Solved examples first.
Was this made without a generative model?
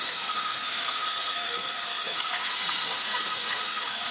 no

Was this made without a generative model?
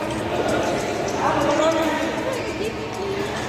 yes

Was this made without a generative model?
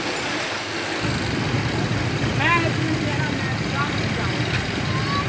yes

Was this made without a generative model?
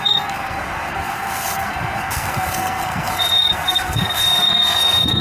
no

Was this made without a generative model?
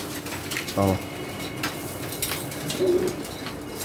yes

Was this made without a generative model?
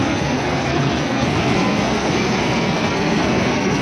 no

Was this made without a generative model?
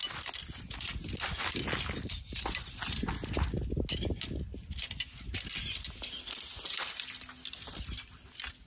yes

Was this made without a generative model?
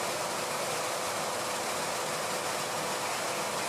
yes